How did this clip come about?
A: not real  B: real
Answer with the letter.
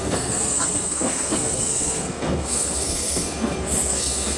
A